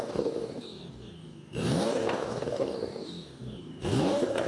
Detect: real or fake fake